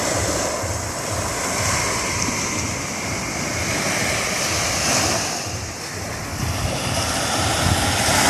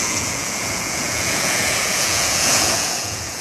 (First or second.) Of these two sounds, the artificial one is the second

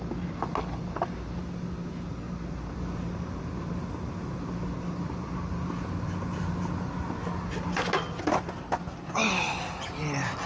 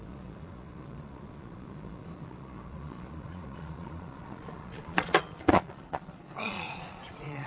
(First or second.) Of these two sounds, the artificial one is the second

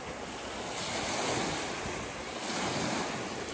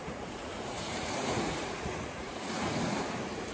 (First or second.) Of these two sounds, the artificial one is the second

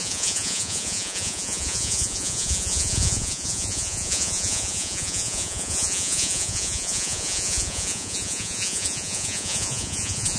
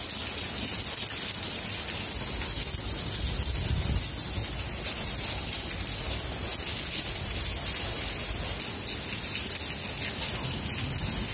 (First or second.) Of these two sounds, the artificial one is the first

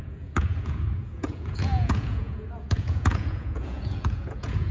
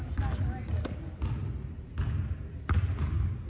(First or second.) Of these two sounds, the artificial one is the first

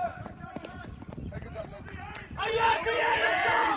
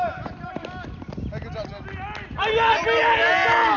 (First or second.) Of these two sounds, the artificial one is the first